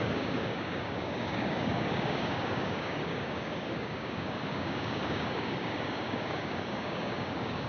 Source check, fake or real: fake